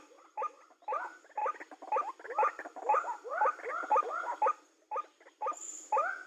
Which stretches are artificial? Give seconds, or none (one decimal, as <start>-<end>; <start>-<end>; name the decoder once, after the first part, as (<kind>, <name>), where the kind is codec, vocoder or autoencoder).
none